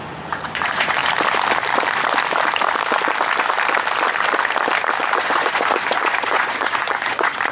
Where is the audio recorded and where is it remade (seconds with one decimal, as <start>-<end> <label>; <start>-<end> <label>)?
0.0-1.0 remade; 1.0-5.1 recorded; 5.1-7.5 remade